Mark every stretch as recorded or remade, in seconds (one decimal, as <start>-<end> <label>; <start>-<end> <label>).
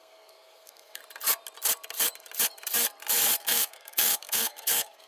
0.0-1.0 remade; 1.0-3.4 recorded; 3.4-5.1 remade